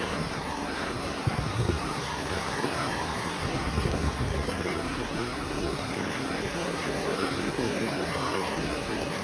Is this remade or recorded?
remade